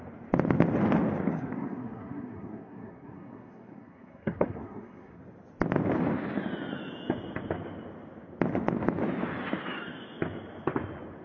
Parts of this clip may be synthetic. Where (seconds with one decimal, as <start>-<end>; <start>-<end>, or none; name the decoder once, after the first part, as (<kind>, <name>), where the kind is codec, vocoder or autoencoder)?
1.3-5.2 (codec, SNAC)